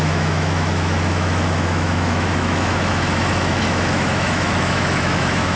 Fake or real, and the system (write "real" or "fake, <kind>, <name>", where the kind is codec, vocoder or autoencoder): fake, autoencoder, DAC-VAE